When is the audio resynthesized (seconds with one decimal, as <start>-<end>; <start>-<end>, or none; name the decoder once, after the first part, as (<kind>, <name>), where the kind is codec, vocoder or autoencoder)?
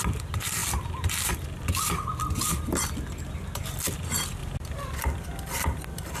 0.0-0.6 (vocoder, BigVGAN v2); 2.2-4.4; 5.0-6.2